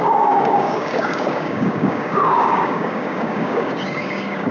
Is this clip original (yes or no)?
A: no